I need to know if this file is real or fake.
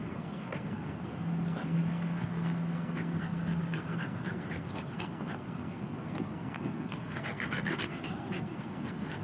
fake